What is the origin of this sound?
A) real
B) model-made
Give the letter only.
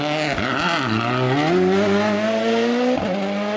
A